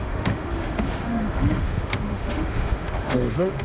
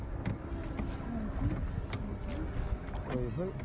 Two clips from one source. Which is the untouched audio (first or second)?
second